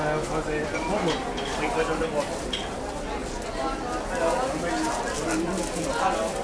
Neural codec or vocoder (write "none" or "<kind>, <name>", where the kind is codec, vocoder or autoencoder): none